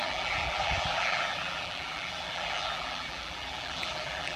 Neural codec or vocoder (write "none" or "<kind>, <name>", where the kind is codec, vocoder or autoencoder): vocoder, BigVGAN v2